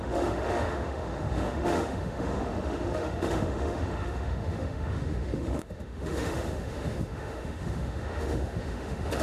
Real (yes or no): no